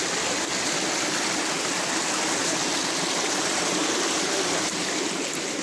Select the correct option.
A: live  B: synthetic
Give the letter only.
A